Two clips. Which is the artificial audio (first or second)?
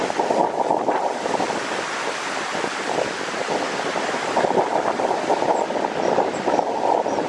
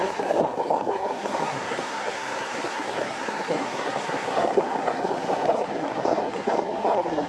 second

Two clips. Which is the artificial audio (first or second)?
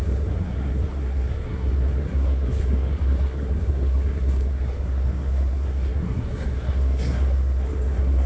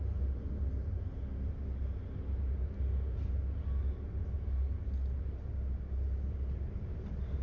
first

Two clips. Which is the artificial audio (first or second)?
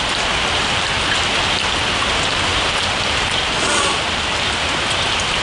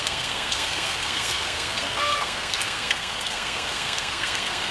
second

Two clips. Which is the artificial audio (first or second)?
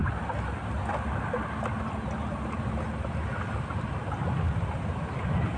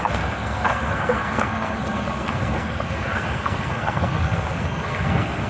second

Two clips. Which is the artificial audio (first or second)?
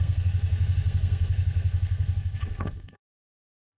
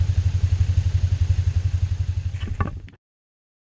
first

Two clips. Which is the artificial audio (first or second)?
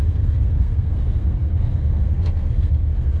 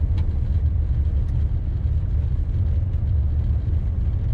first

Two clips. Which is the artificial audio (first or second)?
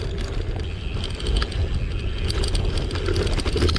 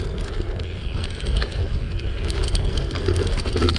second